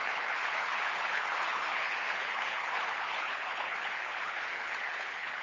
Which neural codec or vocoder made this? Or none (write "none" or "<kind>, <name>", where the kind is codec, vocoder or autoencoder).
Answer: codec, HILCodec